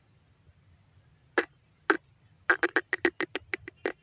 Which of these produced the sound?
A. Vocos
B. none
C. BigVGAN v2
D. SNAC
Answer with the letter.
B